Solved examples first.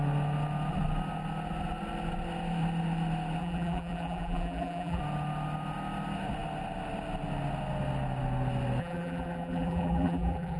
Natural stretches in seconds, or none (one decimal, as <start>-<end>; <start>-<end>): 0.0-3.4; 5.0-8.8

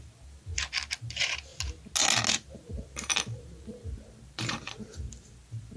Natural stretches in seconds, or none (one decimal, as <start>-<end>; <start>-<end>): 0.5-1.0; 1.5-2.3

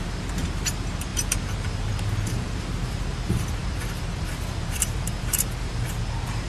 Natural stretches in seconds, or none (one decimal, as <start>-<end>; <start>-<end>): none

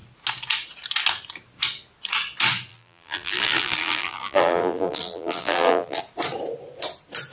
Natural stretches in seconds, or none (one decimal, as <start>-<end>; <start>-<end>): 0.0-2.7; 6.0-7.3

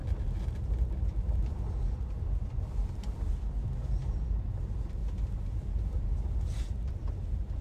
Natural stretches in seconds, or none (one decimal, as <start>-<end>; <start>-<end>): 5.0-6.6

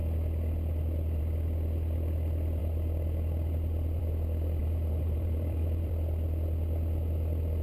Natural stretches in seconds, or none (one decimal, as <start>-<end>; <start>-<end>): 0.0-4.6; 5.9-7.6

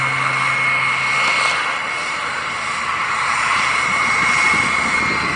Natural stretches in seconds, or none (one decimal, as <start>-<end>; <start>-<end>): 0.0-2.0; 5.0-5.4